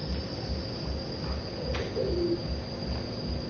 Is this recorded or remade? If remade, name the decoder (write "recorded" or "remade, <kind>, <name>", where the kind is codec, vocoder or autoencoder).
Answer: recorded